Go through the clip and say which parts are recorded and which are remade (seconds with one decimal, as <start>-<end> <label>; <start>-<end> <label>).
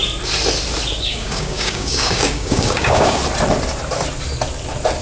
0.0-1.0 recorded; 1.0-3.2 remade; 3.2-5.0 recorded